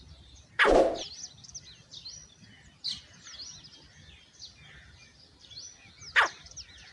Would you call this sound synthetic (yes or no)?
no